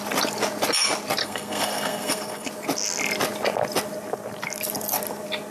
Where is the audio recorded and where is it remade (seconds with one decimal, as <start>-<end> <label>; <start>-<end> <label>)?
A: 0.0-1.2 recorded; 1.2-2.5 remade; 2.5-5.5 recorded